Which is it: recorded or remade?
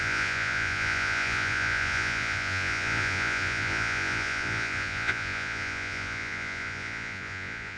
remade